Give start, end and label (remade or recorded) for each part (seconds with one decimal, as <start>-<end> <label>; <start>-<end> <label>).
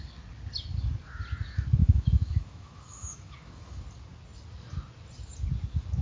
0.0-1.8 recorded; 1.8-3.8 remade; 3.8-6.0 recorded